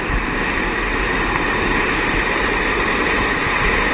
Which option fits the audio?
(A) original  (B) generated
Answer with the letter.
A